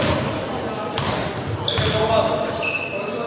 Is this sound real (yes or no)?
yes